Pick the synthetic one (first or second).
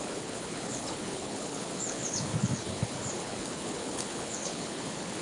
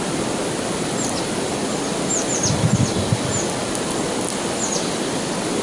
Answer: first